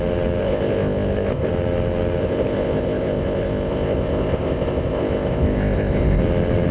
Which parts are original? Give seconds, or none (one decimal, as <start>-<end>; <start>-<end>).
0.0-0.4; 1.5-2.2; 6.2-6.7